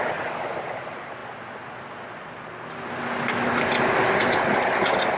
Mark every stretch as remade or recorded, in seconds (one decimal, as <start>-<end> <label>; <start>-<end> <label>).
0.0-5.2 recorded